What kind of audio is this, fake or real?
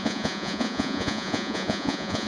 fake